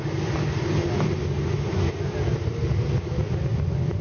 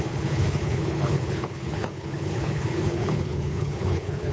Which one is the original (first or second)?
first